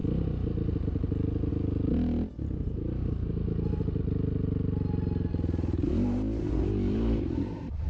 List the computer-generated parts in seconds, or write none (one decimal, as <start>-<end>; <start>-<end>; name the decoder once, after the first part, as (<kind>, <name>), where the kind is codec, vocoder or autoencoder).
none